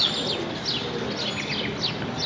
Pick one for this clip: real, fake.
real